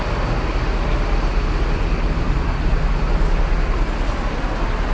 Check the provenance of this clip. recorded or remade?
recorded